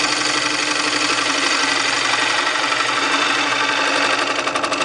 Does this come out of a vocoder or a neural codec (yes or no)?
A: no